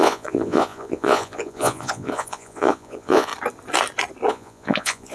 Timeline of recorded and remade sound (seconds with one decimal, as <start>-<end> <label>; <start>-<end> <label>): 0.0-3.3 remade; 3.3-4.3 recorded; 4.3-5.1 remade